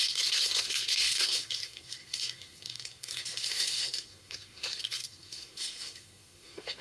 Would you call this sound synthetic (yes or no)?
yes